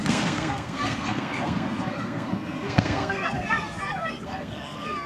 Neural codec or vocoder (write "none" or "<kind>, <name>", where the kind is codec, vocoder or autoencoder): codec, SNAC